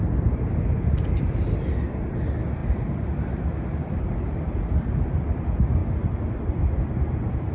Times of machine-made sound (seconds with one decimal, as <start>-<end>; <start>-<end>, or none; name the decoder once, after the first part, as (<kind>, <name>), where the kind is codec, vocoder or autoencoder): 2.6-3.4 (vocoder, BigVGAN v2)